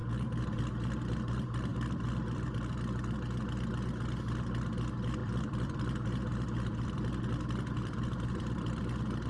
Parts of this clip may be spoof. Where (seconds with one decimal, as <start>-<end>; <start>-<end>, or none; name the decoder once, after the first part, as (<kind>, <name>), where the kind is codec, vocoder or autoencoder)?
1.7-3.7 (vocoder, BigVGAN v2); 5.2-8.8